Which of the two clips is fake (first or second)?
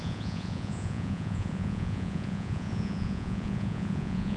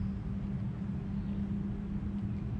first